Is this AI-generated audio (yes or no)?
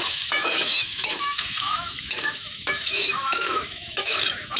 yes